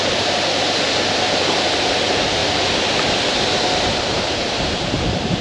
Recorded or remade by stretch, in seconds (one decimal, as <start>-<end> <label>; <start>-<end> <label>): 0.0-2.4 remade; 2.4-4.1 recorded; 4.1-5.4 remade